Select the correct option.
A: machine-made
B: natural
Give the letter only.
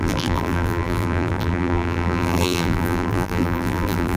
A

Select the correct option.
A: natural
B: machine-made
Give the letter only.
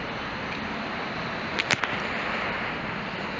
B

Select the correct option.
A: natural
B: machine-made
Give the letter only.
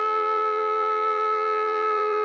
B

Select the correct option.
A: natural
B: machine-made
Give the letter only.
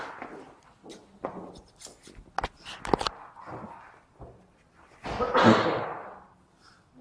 A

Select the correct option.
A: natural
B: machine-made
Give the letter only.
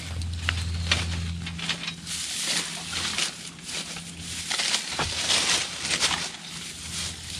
A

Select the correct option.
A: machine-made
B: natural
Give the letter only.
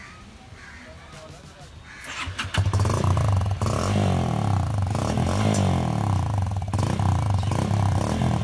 B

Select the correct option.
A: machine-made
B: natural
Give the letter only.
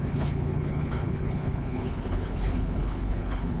A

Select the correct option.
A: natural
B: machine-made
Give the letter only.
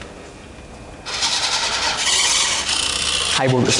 A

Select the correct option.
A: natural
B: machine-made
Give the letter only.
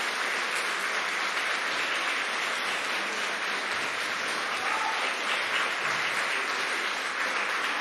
A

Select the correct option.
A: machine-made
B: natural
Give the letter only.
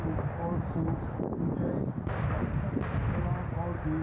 B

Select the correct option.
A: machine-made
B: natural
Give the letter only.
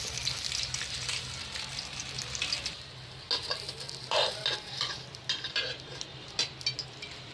B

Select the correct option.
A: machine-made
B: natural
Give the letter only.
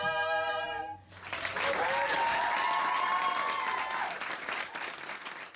B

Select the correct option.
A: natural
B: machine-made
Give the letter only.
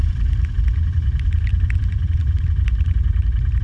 B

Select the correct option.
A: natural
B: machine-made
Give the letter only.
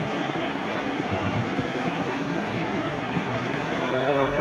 B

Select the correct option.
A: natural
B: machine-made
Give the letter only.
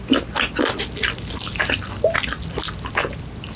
A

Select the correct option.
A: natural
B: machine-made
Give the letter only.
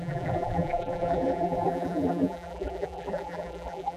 B